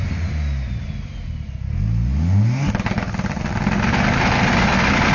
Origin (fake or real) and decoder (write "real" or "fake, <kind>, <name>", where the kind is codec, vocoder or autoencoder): real